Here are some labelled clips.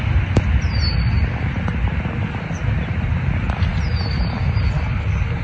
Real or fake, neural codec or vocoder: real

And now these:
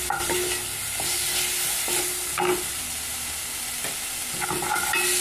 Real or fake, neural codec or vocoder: real